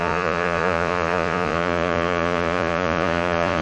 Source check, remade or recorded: remade